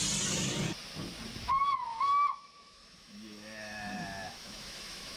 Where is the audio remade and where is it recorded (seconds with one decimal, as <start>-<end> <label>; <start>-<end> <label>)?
0.0-1.9 recorded; 1.9-5.2 remade